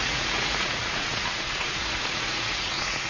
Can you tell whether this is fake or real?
fake